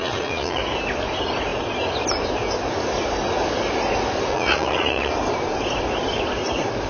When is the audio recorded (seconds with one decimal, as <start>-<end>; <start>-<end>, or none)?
0.6-4.3; 5.1-6.9